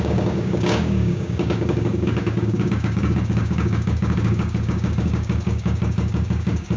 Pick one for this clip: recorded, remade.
remade